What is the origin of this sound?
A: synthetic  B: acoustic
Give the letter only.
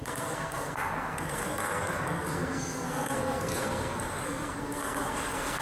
A